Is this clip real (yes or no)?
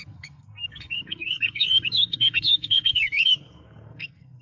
no